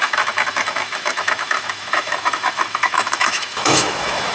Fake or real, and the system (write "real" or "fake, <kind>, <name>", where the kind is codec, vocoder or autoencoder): fake, autoencoder, DAC-VAE